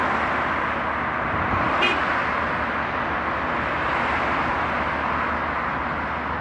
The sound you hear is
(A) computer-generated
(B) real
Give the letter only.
B